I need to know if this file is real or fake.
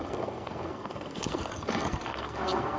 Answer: fake